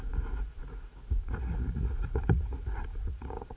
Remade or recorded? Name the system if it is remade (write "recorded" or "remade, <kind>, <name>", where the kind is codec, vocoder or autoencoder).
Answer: remade, vocoder, Vocos